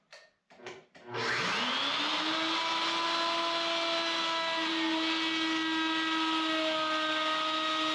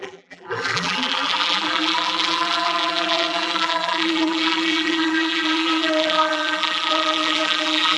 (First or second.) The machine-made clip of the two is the second